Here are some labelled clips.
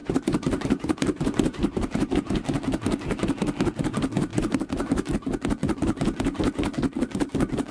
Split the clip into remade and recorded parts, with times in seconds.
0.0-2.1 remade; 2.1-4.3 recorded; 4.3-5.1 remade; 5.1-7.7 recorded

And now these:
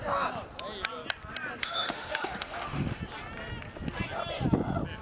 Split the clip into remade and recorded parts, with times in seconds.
0.0-1.6 recorded; 1.6-3.0 remade; 3.0-5.0 recorded